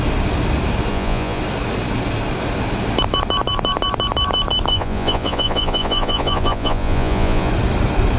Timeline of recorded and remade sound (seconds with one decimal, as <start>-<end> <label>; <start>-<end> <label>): 0.0-0.9 recorded; 0.9-1.4 remade; 1.4-4.7 recorded; 4.7-7.5 remade; 7.5-8.2 recorded